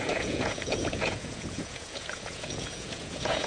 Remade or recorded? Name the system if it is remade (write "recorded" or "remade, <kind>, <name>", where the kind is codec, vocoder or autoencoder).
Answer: remade, vocoder, Vocos